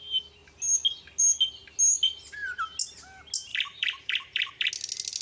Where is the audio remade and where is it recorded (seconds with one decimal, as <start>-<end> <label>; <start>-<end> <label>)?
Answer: 0.0-3.5 recorded; 3.5-4.7 remade; 4.7-5.2 recorded